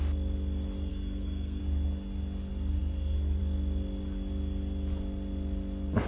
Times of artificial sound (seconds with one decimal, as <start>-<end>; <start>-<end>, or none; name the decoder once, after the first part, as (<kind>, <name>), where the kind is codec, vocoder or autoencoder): 0.9-1.6 (codec, SNAC)

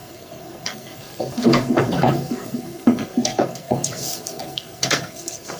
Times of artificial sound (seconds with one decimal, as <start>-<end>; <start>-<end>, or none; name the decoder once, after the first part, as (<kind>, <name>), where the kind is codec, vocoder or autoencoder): 0.0-5.6 (codec, SNAC)